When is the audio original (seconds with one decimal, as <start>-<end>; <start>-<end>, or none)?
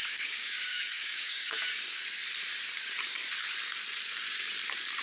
2.0-5.0